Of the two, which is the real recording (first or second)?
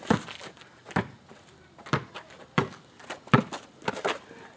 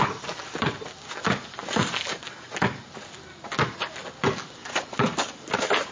second